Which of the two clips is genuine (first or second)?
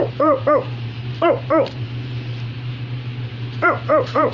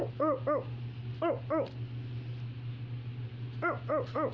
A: second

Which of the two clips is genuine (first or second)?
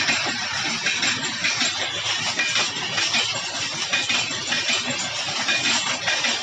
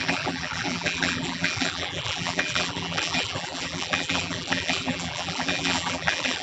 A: first